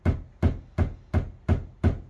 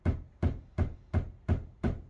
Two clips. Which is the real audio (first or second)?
first